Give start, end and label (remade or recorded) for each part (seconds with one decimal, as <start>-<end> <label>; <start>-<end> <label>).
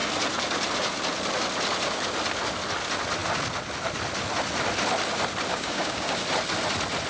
0.0-5.5 recorded; 5.5-6.2 remade; 6.2-7.1 recorded